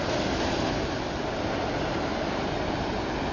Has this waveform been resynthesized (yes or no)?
no